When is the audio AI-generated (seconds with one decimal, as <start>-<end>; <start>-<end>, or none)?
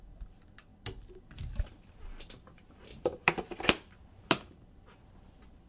none